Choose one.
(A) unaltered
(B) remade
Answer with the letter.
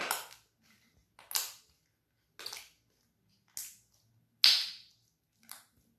A